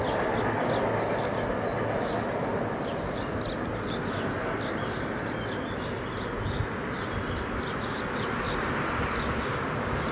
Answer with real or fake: real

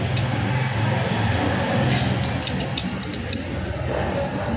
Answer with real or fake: real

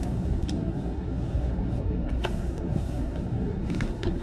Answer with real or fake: fake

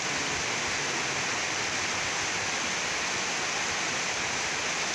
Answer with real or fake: real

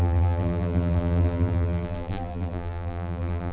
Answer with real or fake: fake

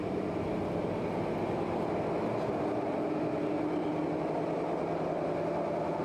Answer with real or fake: real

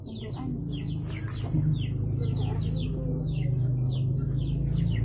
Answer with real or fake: real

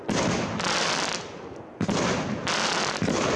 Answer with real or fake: real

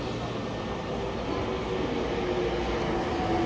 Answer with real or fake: real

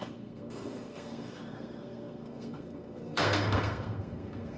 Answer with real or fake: fake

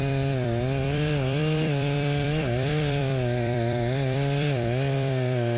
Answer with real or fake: fake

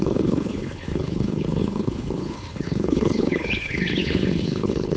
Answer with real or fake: fake